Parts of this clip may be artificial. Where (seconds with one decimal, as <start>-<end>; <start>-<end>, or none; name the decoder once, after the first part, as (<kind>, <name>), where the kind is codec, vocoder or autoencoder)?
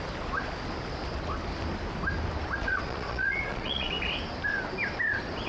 2.6-3.9 (vocoder, Vocos)